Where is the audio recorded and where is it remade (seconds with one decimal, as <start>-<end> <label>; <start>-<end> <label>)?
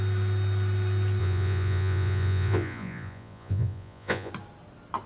0.0-1.2 recorded; 1.2-4.3 remade; 4.3-5.1 recorded